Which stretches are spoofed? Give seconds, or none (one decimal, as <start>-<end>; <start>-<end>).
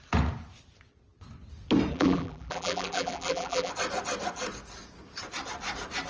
1.9-3.7